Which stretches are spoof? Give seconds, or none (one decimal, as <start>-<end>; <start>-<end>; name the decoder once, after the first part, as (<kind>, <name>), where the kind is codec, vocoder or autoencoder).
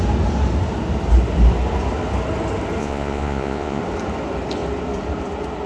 2.8-3.8 (vocoder, Vocos)